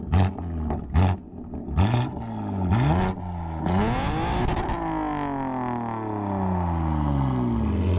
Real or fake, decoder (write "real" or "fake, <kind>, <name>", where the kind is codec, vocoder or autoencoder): real